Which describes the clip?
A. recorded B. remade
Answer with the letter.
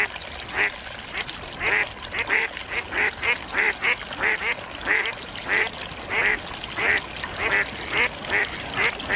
A